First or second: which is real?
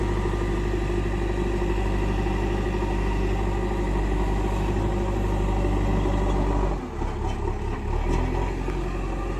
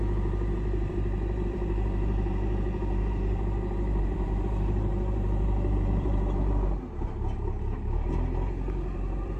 first